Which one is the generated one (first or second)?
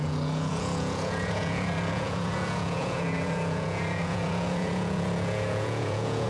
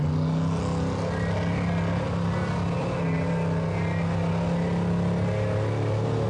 first